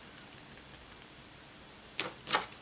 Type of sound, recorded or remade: remade